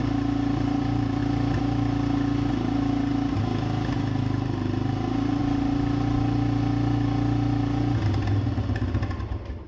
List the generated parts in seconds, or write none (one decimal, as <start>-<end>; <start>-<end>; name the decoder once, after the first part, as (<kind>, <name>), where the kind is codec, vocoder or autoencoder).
0.0-1.2 (vocoder, BigVGAN v2); 2.5-3.1; 4.2-5.4